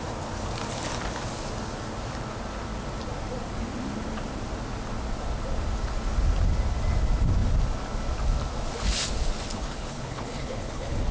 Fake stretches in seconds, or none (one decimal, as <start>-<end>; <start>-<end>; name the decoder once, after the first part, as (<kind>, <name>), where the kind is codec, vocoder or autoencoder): 9.5-11.1 (codec, HILCodec)